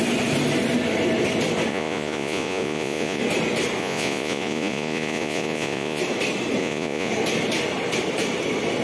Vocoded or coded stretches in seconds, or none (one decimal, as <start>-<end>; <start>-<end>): 1.7-3.2; 3.8-6.0; 6.6-7.1